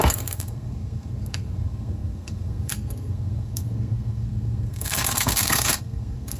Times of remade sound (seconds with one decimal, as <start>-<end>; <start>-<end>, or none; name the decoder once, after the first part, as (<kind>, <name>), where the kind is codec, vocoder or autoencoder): 0.0-6.4 (codec, SNAC)